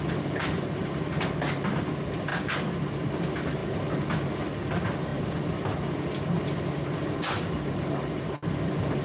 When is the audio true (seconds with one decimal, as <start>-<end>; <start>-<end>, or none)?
0.0-9.0